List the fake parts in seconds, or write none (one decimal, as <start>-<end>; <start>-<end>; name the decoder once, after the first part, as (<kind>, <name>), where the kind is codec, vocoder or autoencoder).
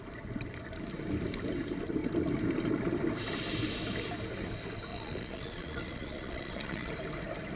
4.9-6.9 (vocoder, Vocos)